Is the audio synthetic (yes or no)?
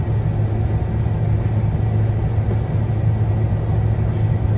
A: no